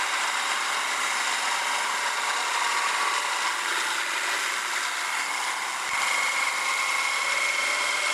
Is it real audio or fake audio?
real